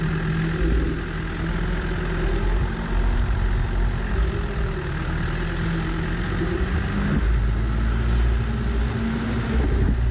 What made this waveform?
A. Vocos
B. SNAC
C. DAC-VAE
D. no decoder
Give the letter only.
D